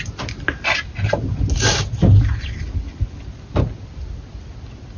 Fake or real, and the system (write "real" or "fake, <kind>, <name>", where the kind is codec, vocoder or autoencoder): real